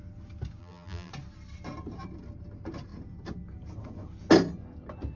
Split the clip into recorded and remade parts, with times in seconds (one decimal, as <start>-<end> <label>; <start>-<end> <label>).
0.0-0.6 recorded; 0.6-1.1 remade; 1.1-5.2 recorded